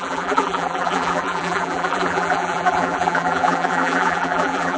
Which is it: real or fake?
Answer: fake